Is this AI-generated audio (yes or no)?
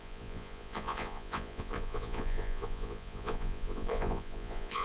yes